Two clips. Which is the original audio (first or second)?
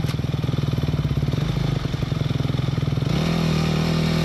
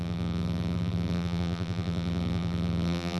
first